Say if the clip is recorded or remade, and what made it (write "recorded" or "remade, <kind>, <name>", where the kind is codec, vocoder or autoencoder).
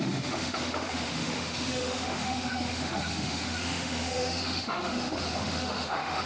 remade, autoencoder, DAC-VAE